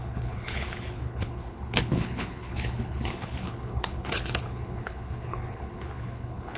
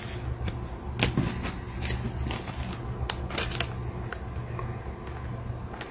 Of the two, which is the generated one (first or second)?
first